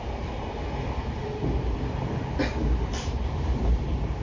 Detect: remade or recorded recorded